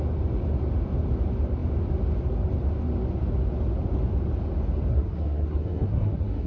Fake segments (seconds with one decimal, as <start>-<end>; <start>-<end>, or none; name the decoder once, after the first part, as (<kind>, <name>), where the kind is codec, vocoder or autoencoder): 4.9-6.5 (codec, SNAC)